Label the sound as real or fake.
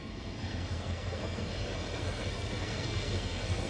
fake